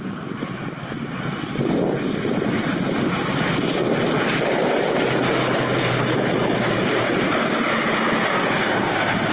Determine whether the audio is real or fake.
real